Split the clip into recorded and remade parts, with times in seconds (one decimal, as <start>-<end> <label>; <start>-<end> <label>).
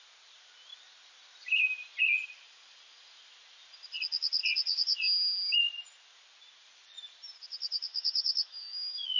0.0-7.9 recorded; 7.9-9.2 remade